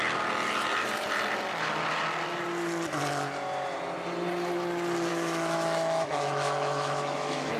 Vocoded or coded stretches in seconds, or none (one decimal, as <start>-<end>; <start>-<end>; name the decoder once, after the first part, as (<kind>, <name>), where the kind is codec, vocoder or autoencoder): 5.1-7.6 (autoencoder, DAC-VAE)